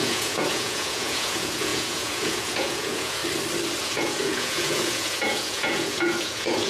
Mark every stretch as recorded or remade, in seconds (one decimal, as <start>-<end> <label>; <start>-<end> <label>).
0.0-3.2 remade; 3.2-3.8 recorded; 3.8-6.7 remade